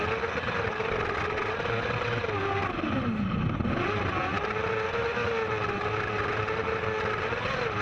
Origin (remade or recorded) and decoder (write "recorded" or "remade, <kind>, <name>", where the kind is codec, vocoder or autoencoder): recorded